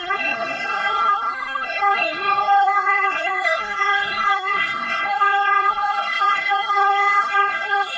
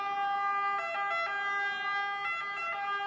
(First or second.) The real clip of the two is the second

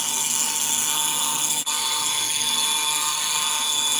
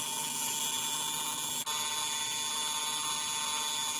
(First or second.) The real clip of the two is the second